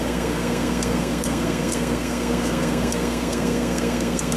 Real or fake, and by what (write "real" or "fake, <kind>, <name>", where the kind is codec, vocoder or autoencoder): fake, codec, SNAC